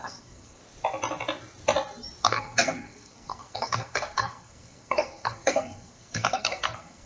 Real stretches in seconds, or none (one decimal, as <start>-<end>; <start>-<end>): 0.6-2.2